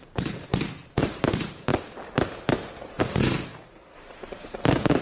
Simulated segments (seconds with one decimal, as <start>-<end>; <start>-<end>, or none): 0.0-1.7; 3.0-5.0